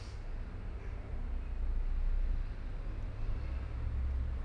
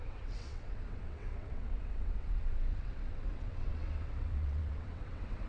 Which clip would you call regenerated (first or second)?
second